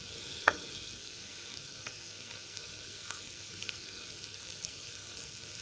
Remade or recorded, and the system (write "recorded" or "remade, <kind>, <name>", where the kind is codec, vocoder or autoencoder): remade, codec, SNAC